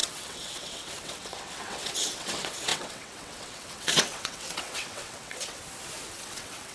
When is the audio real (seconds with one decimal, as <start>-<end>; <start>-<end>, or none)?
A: 5.6-6.1